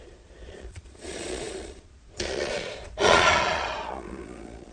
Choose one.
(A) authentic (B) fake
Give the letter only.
B